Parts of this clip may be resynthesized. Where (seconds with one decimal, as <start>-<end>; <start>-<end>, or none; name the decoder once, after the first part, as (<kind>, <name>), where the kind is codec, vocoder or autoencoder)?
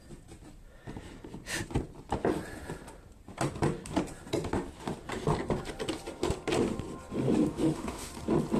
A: 7.5-8.1 (autoencoder, DAC-VAE)